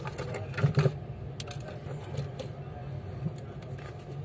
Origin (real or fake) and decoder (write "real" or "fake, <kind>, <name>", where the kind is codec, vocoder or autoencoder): real